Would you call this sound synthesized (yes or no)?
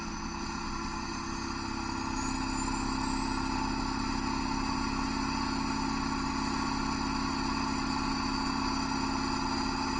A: no